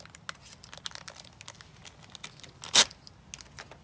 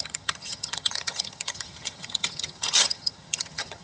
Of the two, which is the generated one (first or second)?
second